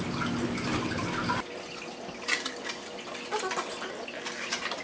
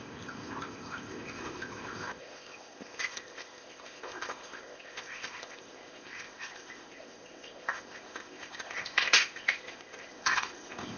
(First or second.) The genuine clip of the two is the first